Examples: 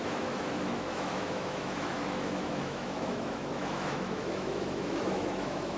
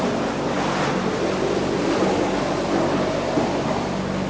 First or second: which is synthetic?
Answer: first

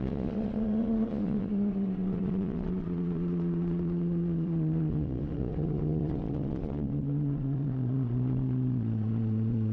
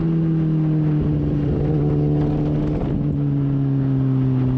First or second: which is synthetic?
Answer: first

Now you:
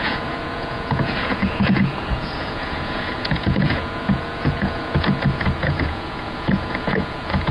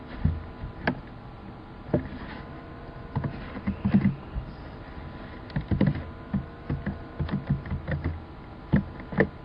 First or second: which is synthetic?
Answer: first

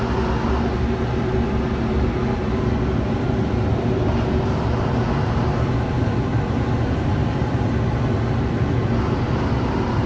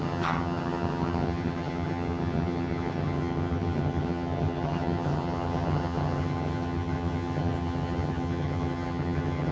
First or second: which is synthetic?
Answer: second